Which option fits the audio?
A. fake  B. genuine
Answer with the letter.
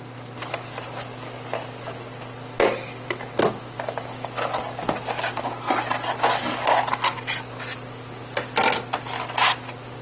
B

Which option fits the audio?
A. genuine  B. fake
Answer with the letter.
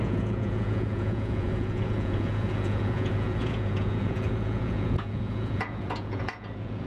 B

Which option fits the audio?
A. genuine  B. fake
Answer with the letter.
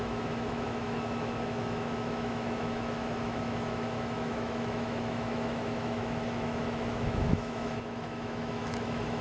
B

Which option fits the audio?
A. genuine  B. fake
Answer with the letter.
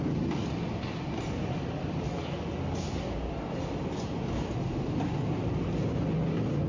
A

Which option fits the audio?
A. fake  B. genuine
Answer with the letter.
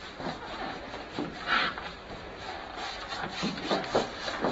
B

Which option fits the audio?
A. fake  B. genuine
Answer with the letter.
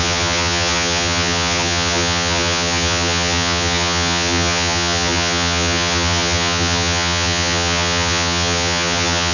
A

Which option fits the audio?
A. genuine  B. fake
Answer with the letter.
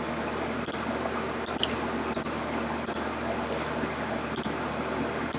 A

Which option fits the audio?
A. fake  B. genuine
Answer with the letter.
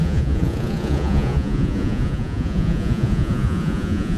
A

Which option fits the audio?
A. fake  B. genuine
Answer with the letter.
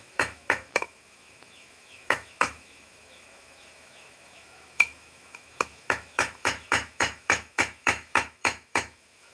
A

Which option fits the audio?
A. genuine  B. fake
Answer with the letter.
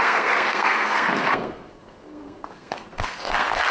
B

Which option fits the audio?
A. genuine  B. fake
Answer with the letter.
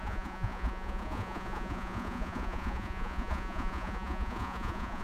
B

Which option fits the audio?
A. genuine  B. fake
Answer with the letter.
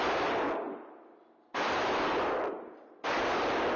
A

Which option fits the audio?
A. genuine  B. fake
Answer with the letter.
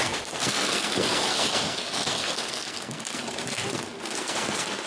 B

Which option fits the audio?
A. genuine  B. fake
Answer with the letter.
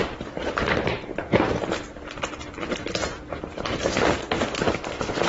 B